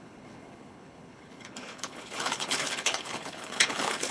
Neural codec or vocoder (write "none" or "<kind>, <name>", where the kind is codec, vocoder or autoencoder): codec, HILCodec